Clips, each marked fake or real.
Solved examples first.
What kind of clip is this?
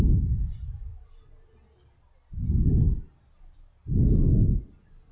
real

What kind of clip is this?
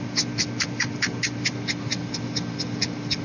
real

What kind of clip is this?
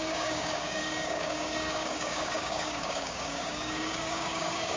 fake